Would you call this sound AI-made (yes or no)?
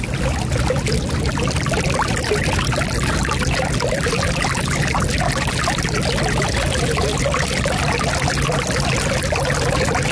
no